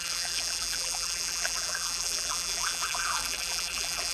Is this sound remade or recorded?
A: remade